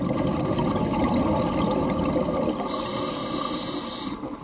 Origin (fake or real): real